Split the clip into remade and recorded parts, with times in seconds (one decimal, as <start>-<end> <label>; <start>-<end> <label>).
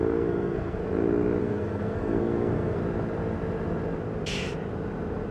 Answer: 0.0-0.8 remade; 0.8-1.4 recorded; 1.4-2.8 remade; 2.8-5.3 recorded